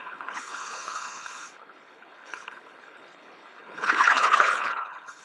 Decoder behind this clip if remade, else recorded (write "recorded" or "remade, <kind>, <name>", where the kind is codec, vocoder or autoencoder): remade, codec, HILCodec